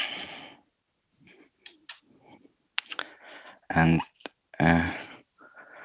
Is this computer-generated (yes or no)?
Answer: no